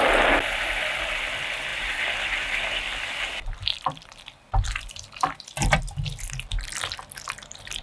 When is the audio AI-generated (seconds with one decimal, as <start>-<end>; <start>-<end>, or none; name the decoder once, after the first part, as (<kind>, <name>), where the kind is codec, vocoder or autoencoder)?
3.7-5.8 (vocoder, BigVGAN v2)